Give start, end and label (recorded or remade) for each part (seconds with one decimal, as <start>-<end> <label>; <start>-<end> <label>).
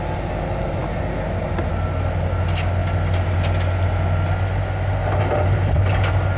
0.0-6.4 recorded